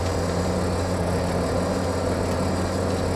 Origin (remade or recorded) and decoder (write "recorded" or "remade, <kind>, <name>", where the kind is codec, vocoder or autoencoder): recorded